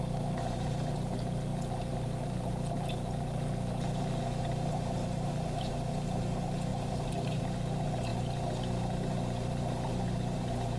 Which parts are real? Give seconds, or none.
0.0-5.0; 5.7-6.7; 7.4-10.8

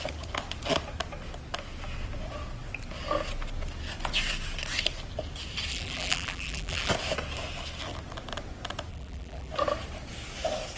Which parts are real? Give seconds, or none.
0.0-5.7; 6.9-8.9; 9.5-10.8

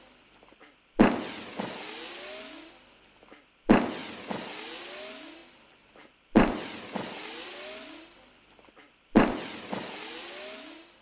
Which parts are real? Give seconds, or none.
0.0-5.4; 9.7-11.0

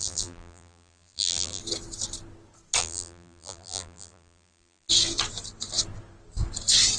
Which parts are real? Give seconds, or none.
1.6-2.8; 4.9-7.0

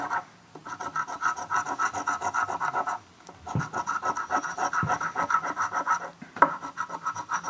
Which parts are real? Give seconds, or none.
0.6-4.9

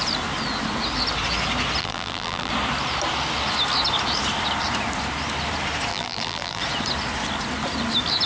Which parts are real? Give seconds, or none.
0.0-1.8; 2.5-5.9; 6.6-8.3

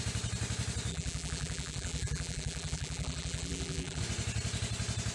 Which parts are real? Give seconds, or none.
0.0-0.9; 4.0-5.1